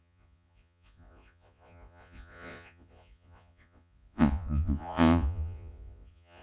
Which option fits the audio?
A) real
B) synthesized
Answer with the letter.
B